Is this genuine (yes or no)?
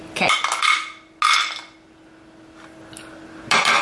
yes